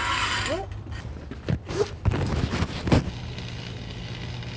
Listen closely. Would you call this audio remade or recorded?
recorded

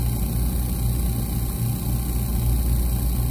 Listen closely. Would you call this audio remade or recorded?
recorded